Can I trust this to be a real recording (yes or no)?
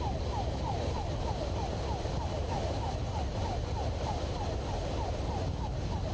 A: yes